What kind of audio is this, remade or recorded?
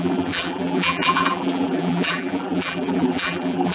remade